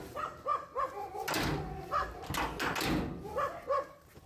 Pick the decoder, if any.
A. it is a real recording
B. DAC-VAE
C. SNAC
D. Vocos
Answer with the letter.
A